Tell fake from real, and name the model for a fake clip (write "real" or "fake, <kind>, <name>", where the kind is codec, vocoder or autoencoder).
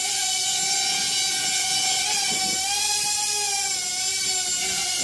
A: real